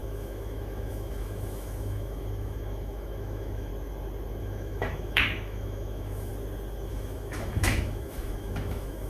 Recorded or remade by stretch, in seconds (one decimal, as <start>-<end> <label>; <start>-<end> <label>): 0.0-3.7 remade; 3.7-4.4 recorded; 4.4-6.3 remade; 6.3-6.9 recorded; 6.9-9.1 remade